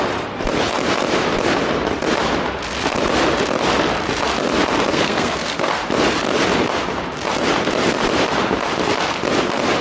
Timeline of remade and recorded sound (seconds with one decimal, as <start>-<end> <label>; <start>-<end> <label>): 0.0-4.9 recorded; 4.9-5.8 remade; 5.8-9.8 recorded